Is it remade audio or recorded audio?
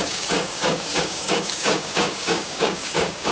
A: remade